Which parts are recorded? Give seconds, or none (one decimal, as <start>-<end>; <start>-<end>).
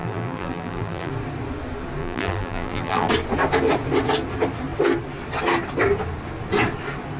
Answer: 1.1-2.0; 3.1-7.2